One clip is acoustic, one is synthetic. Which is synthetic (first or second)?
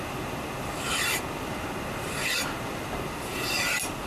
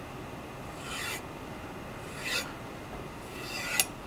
first